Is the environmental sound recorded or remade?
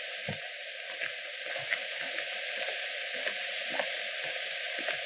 recorded